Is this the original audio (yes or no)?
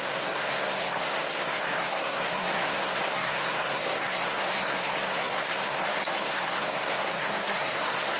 no